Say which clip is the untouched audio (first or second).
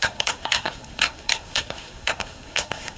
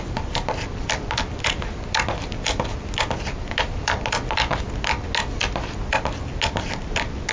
second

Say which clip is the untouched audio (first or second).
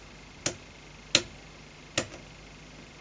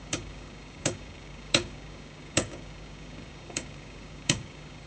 first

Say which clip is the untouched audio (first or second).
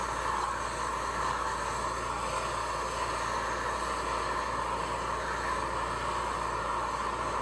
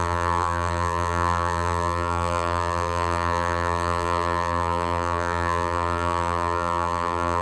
first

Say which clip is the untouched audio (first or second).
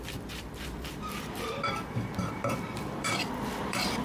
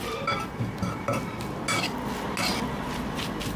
second